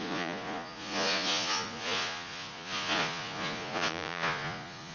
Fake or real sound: fake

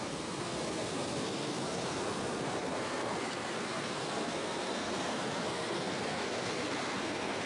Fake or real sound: fake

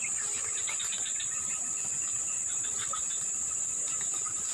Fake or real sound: real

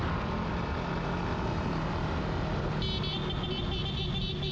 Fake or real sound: real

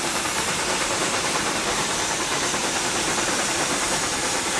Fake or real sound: fake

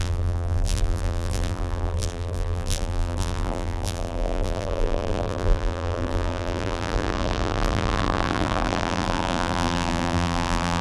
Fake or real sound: fake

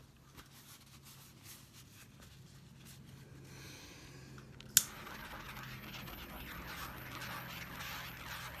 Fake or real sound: real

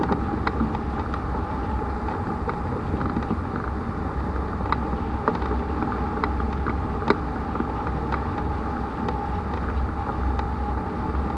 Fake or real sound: real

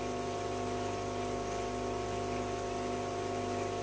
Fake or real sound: real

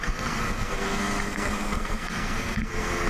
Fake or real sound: fake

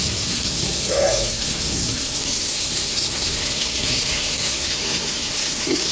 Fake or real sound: fake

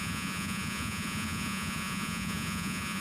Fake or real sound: fake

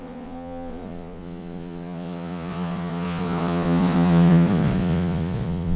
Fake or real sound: fake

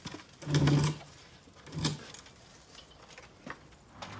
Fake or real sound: real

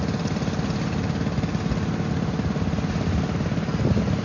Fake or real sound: real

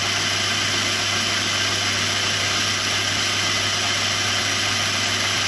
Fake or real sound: real